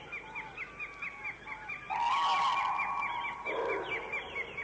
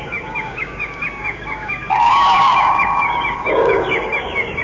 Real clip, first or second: first